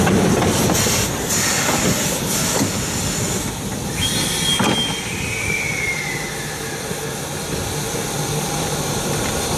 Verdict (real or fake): real